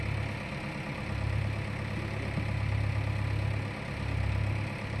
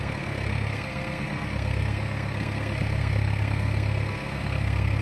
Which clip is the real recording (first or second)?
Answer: first